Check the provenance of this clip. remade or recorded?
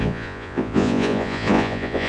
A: remade